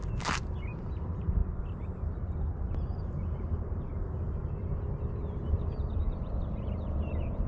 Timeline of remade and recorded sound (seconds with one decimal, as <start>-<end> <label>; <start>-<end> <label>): 0.0-1.4 remade; 1.4-2.6 recorded; 2.6-3.9 remade; 3.9-5.6 recorded; 5.6-7.5 remade